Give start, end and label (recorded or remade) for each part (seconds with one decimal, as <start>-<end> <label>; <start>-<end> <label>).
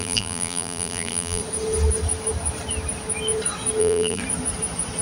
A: 0.0-1.4 remade; 1.4-3.8 recorded; 3.8-4.2 remade; 4.2-5.0 recorded